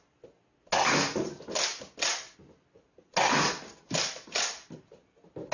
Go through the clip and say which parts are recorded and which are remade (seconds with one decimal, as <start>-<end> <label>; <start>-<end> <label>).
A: 0.0-5.5 recorded